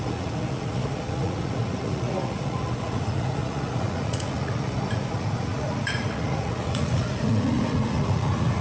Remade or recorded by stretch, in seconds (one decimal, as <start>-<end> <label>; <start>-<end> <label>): 0.0-8.6 remade